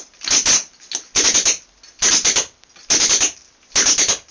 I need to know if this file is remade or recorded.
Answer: recorded